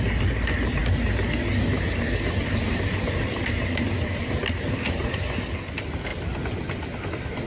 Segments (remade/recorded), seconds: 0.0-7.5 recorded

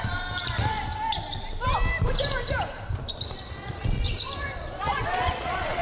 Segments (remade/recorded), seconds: 0.0-3.6 recorded; 3.6-4.1 remade; 4.1-4.6 recorded; 4.6-5.8 remade

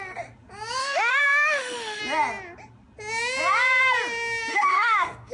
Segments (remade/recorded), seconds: 0.0-0.8 recorded; 0.8-2.0 remade; 2.0-4.5 recorded; 4.5-5.3 remade